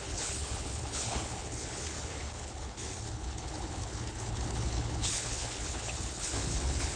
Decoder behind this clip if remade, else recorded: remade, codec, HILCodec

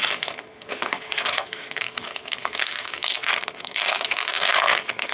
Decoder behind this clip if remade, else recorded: remade, codec, SNAC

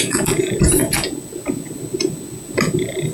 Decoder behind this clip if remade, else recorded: recorded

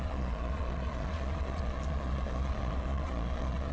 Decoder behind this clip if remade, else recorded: remade, vocoder, Vocos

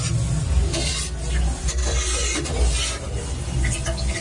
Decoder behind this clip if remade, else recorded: recorded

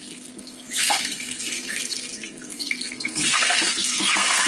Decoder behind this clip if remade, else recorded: remade, codec, SNAC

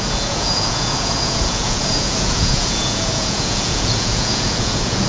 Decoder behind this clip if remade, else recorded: remade, vocoder, Vocos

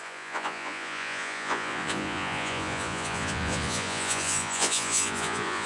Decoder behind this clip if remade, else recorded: remade, vocoder, Vocos